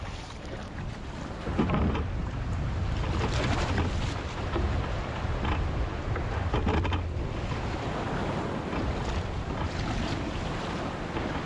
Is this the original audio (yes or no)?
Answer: yes